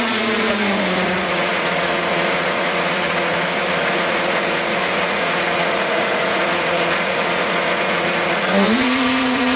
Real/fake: fake